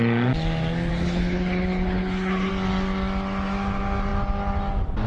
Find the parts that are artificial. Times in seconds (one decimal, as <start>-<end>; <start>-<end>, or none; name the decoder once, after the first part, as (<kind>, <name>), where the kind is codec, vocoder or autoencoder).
0.9-2.5 (codec, HILCodec)